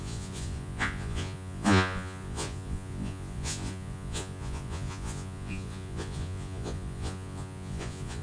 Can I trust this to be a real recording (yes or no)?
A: no